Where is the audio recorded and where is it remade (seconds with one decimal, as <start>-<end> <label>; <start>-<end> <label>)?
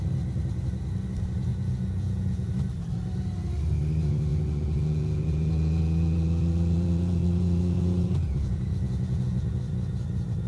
0.0-1.5 recorded; 1.5-2.5 remade; 2.5-4.3 recorded; 4.3-9.6 remade; 9.6-10.5 recorded